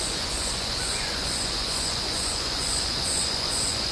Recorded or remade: remade